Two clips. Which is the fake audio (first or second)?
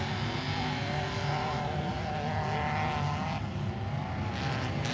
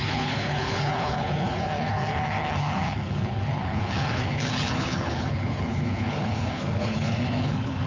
second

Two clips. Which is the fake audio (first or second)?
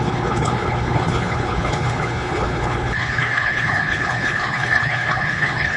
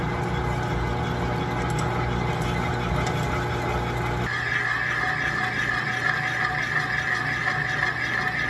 first